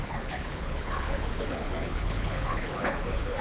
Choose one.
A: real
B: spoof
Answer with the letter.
B